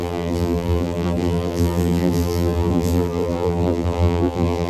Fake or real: fake